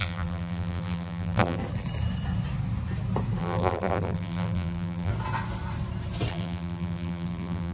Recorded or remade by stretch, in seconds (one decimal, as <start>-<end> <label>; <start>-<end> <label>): 0.0-1.6 remade; 1.6-3.4 recorded; 3.4-5.1 remade; 5.1-6.3 recorded; 6.3-7.7 remade